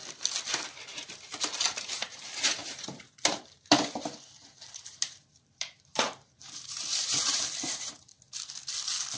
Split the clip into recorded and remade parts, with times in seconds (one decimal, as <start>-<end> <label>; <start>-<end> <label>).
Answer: 0.0-1.5 recorded; 1.5-8.1 remade; 8.1-9.2 recorded